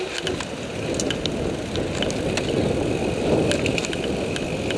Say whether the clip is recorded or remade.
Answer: recorded